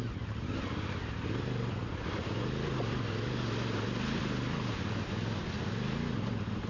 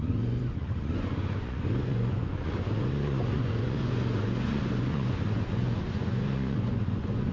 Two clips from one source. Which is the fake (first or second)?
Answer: second